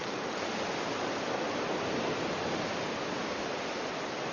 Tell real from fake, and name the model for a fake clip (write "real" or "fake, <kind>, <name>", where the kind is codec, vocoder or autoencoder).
real